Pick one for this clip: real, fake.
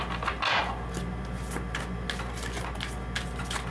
real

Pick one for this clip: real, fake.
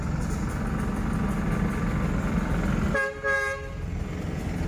real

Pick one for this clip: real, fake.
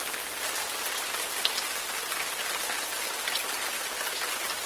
real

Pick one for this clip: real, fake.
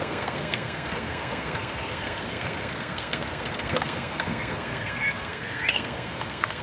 fake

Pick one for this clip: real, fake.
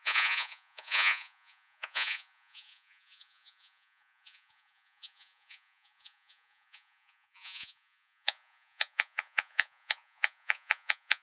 fake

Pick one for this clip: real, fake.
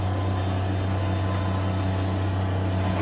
real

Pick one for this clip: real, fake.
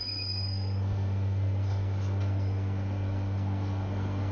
fake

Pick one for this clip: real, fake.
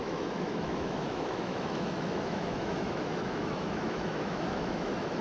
fake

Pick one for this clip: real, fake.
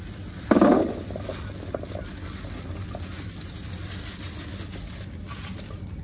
real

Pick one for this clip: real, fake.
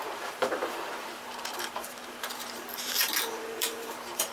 fake